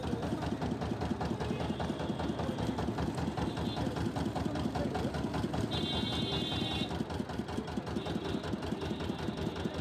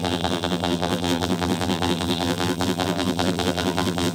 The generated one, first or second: second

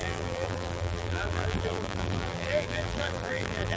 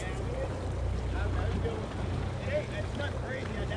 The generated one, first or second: first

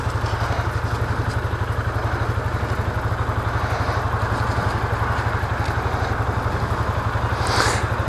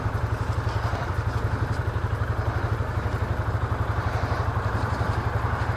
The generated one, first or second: second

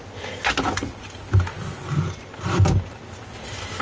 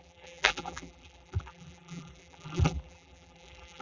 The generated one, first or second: second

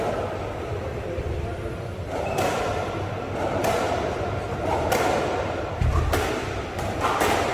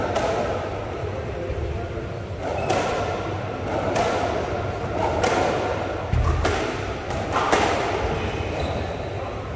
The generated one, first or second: first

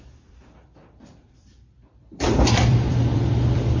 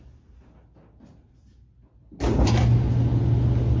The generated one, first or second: first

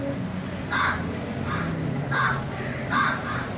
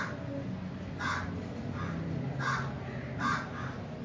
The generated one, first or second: first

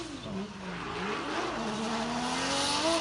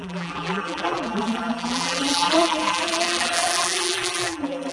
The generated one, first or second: second